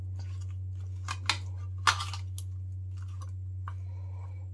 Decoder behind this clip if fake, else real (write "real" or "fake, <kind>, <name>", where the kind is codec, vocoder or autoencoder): real